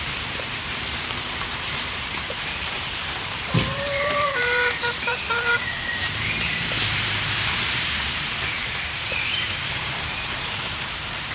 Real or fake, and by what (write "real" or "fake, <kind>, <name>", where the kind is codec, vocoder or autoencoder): fake, vocoder, BigVGAN v2